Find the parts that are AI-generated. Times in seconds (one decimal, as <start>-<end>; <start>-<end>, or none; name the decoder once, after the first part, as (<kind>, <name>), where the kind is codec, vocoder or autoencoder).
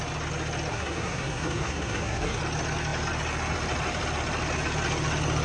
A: 0.7-2.4 (codec, SNAC)